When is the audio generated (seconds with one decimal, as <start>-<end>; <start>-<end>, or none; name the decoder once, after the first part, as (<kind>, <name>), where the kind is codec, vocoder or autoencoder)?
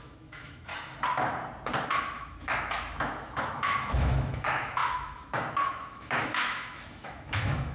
0.0-0.7 (autoencoder, DAC-VAE); 2.0-7.7